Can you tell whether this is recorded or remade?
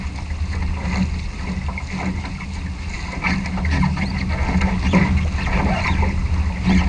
recorded